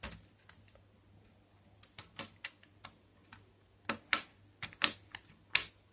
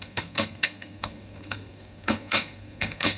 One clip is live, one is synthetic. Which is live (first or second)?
first